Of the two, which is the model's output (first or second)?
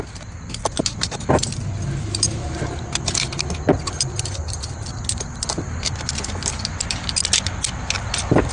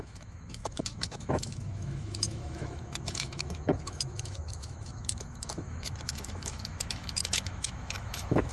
second